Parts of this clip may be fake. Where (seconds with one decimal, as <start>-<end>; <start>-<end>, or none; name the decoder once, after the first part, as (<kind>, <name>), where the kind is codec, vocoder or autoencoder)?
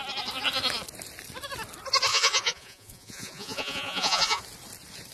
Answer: 2.1-4.4 (vocoder, Vocos)